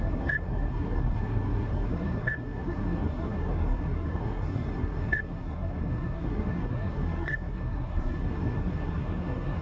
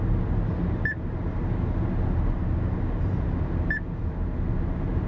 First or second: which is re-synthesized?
first